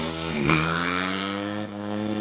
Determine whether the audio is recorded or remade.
remade